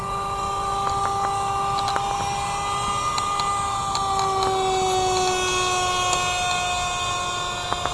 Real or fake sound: real